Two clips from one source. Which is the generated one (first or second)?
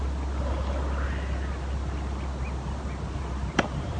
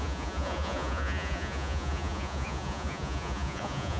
second